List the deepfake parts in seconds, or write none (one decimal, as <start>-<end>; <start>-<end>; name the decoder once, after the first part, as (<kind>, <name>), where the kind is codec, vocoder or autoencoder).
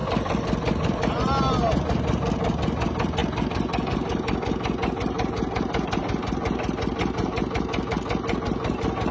none